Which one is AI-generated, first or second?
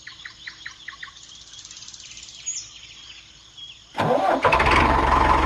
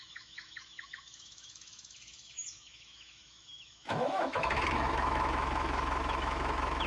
second